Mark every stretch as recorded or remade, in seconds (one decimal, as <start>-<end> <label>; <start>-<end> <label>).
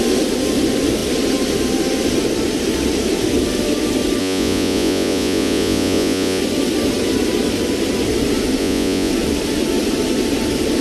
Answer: 0.0-4.2 recorded; 4.2-6.4 remade; 6.4-8.6 recorded; 8.6-9.1 remade; 9.1-10.8 recorded